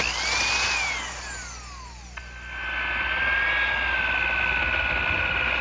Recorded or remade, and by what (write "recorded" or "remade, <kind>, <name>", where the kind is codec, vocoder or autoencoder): recorded